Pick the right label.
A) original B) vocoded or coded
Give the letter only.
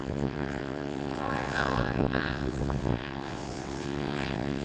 B